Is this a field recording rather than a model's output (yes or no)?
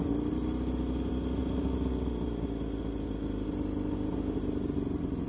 yes